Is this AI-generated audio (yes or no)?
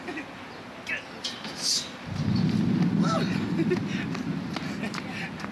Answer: no